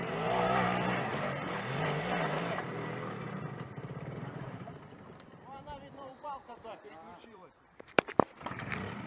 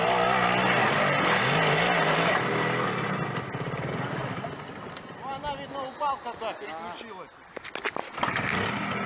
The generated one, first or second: first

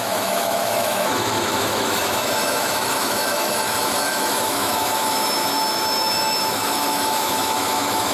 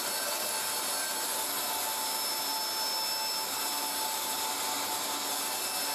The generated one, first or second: first